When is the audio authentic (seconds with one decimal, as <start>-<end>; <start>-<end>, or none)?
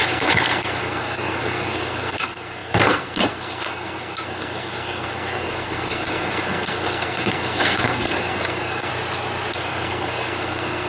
8.9-9.5